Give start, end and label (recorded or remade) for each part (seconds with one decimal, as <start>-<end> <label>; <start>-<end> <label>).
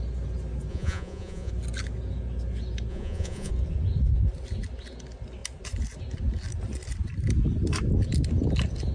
0.0-0.7 recorded; 0.7-1.5 remade; 1.5-2.9 recorded; 2.9-3.5 remade; 3.5-8.9 recorded